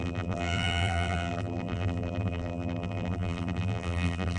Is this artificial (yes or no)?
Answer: yes